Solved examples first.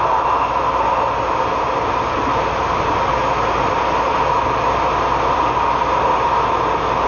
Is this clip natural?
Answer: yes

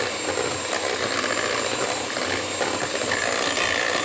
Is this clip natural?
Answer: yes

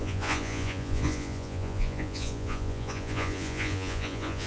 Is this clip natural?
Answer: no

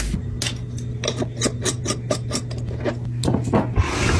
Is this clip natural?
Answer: yes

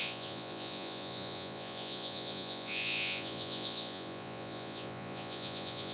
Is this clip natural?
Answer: no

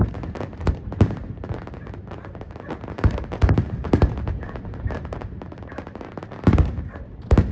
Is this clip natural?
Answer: no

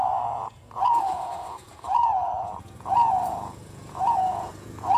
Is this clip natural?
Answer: no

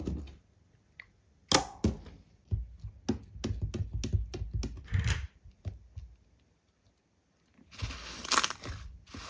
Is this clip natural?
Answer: yes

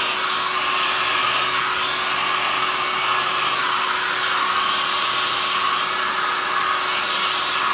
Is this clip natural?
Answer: yes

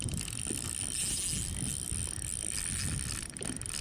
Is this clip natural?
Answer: yes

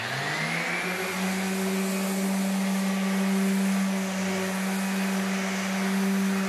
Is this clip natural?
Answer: yes